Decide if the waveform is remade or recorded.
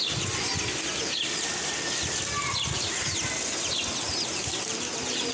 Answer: recorded